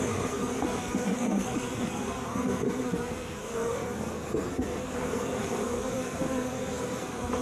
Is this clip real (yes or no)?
no